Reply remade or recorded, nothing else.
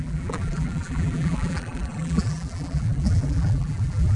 remade